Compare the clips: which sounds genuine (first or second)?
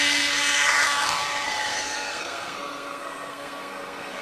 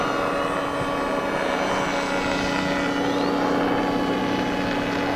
second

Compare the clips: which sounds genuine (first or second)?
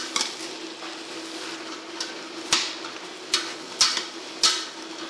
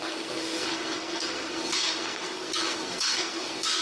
first